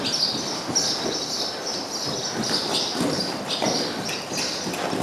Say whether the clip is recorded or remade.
recorded